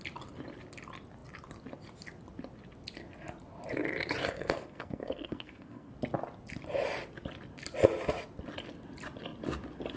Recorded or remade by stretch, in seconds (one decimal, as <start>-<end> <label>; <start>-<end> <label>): 0.0-4.2 recorded; 4.2-5.9 remade; 5.9-10.0 recorded